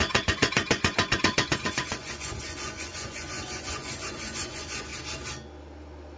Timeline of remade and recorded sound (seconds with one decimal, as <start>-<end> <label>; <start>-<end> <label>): 0.0-4.9 remade; 4.9-6.2 recorded